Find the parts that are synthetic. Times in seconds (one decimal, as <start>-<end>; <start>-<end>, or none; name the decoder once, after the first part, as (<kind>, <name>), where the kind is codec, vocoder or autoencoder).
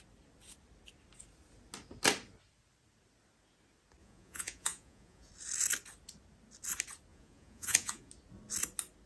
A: 4.0-5.3 (vocoder, Vocos); 7.1-8.1